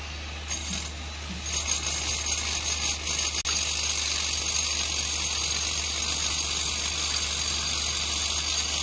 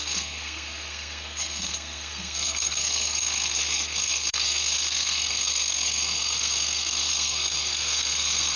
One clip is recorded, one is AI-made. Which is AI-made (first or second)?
second